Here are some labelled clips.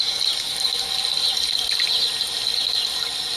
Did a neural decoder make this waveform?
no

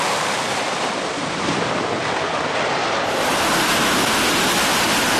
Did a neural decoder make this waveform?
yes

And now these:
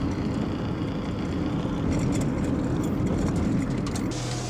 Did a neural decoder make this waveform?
no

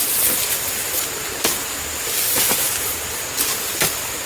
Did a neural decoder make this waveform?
no